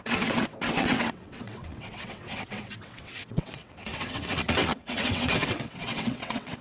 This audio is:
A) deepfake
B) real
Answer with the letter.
A